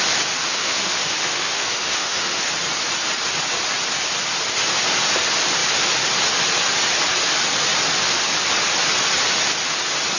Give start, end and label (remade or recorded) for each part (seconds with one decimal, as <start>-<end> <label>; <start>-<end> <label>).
0.0-0.4 recorded; 0.4-2.4 remade; 2.4-10.2 recorded